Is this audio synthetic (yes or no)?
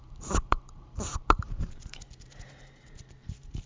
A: yes